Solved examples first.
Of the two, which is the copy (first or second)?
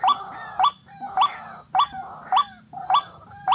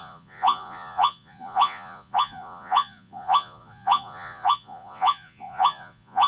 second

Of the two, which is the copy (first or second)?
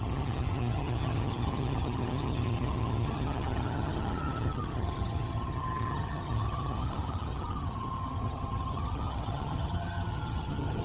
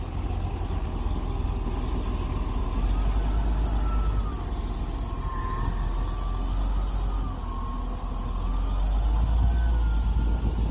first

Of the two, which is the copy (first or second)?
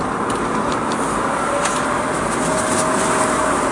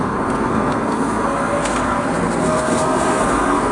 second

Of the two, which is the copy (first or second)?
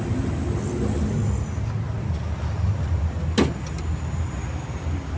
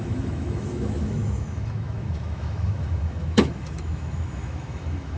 second